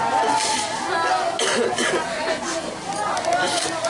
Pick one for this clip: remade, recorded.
recorded